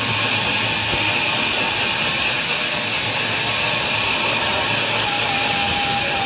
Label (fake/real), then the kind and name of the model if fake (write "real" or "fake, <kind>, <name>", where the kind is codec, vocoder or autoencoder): real